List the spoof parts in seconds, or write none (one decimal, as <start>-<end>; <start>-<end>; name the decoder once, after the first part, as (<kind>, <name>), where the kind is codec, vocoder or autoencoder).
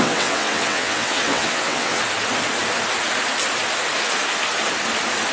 0.0-2.0 (vocoder, WaveNeXt)